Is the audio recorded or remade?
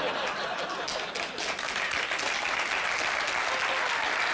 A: recorded